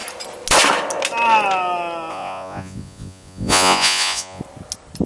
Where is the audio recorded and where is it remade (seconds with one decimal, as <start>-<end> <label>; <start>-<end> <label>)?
0.0-2.1 recorded; 2.1-4.4 remade; 4.4-5.1 recorded